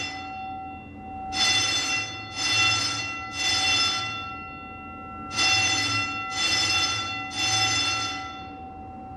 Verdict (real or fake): real